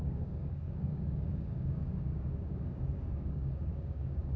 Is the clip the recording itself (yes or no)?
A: no